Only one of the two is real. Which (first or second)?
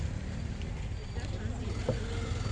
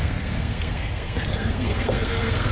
first